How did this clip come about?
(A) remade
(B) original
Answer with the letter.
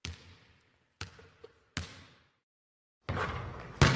B